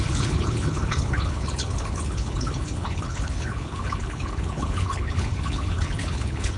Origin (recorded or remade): remade